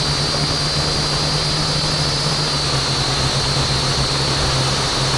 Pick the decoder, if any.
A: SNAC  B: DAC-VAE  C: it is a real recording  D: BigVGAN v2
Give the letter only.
C